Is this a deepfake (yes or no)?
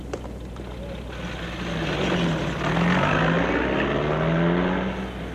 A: no